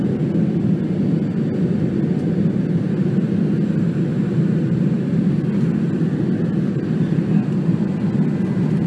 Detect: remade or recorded recorded